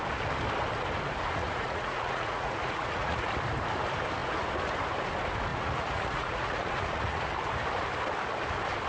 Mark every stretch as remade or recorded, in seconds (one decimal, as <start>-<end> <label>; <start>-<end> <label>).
0.0-1.4 recorded; 1.4-3.3 remade; 3.3-5.5 recorded; 5.5-7.3 remade; 7.3-8.9 recorded